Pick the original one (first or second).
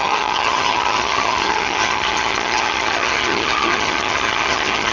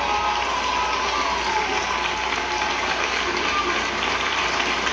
second